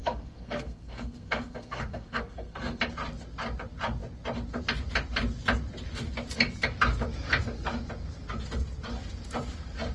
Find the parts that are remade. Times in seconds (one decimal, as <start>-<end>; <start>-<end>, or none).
0.0-2.8